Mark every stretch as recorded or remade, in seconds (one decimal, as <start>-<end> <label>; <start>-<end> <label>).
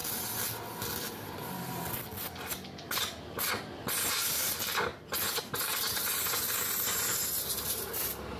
0.0-8.4 recorded